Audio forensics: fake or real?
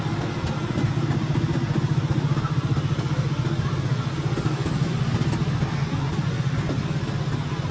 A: real